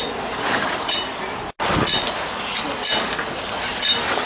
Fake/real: real